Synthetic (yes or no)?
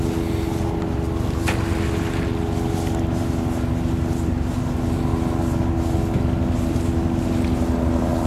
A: no